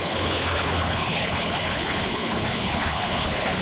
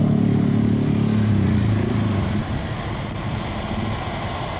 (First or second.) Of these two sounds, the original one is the second